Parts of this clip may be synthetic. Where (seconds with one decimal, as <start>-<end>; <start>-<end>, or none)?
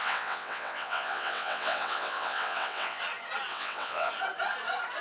0.0-3.0; 3.5-4.1